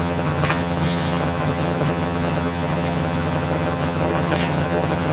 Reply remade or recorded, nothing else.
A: remade